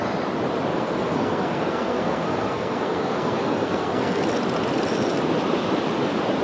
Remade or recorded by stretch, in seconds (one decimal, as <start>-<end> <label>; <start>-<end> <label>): 0.0-0.7 recorded; 0.7-4.2 remade; 4.2-6.4 recorded